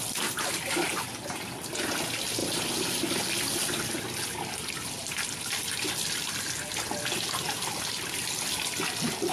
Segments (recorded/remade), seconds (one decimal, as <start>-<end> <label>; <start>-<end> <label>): 0.0-9.3 recorded

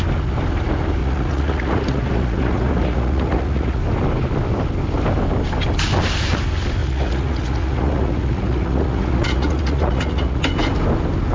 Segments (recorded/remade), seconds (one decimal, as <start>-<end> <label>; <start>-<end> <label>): 0.0-1.0 recorded; 1.0-3.8 remade; 3.8-6.8 recorded; 6.8-10.4 remade; 10.4-11.3 recorded

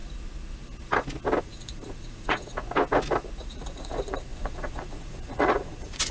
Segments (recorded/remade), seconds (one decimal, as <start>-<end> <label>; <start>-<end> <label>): 0.0-1.4 recorded; 1.4-2.5 remade; 2.5-3.4 recorded; 3.4-6.1 remade